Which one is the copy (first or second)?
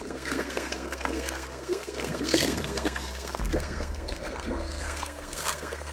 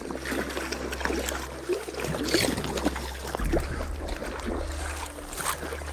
first